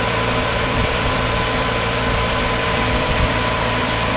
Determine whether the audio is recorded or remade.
remade